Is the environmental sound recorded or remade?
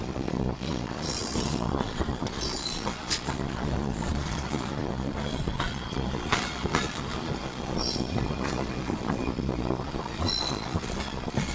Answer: remade